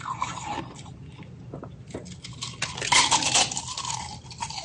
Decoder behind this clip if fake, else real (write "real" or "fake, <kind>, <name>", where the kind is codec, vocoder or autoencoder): real